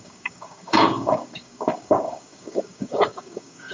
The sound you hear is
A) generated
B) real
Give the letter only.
A